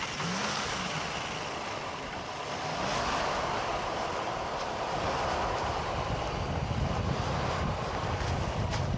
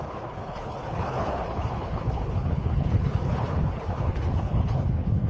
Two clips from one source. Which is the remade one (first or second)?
second